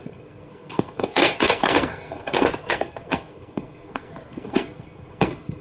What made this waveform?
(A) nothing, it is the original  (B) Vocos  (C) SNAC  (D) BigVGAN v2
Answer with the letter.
C